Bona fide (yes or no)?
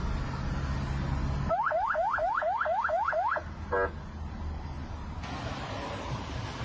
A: yes